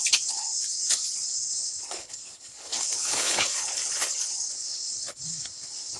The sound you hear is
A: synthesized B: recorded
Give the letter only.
A